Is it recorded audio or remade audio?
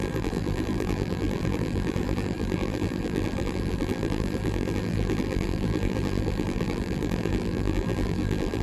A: remade